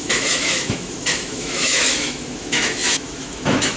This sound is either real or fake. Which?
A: fake